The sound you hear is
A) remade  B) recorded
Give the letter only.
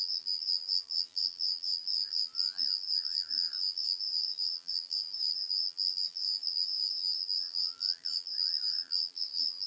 A